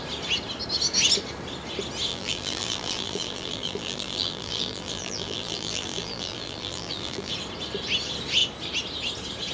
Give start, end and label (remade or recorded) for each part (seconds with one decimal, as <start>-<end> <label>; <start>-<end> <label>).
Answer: 0.0-2.1 recorded; 2.1-7.3 remade; 7.3-9.5 recorded